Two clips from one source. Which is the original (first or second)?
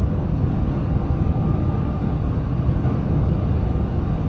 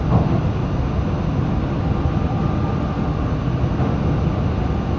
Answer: second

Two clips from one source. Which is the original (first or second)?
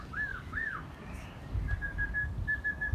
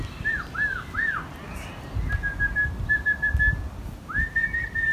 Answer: second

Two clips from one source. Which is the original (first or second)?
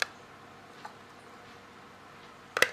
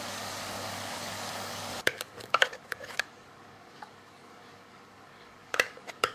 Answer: first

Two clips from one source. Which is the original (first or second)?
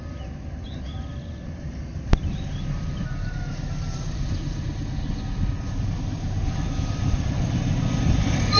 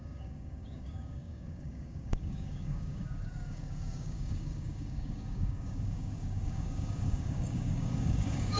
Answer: first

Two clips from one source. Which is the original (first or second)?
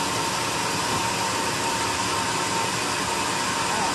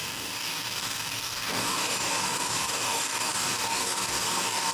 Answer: first